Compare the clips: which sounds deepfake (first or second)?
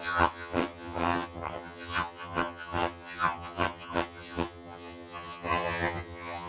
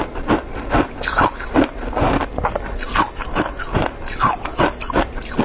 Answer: first